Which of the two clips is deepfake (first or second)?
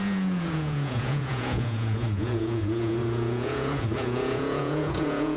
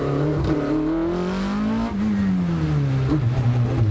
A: first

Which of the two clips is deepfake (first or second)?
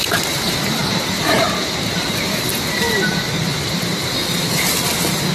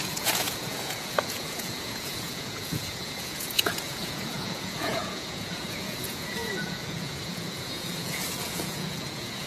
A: second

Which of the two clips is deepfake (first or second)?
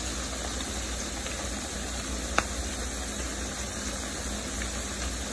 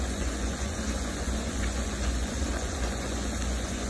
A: second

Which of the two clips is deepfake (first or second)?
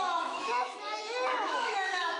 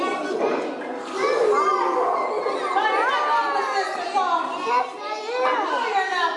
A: first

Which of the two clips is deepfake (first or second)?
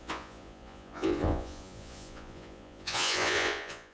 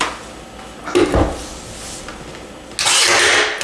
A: first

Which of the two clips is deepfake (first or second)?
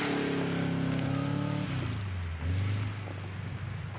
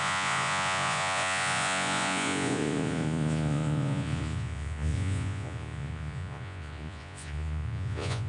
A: second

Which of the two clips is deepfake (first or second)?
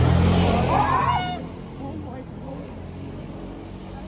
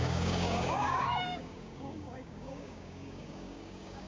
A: second